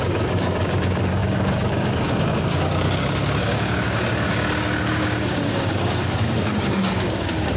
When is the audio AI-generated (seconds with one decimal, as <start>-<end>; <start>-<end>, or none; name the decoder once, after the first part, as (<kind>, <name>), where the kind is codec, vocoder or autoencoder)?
0.0-7.6 (codec, DAC)